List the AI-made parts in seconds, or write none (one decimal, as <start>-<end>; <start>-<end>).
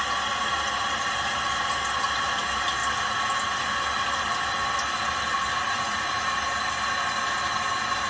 none